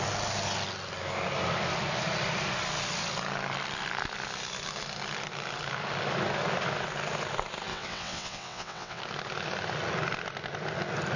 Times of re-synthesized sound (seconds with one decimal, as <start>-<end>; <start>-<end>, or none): 7.7-9.0